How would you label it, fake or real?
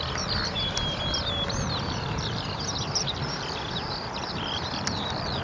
real